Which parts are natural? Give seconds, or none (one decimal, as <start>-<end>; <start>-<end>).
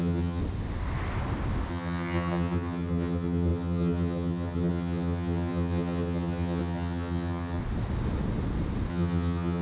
0.4-1.7; 7.6-8.9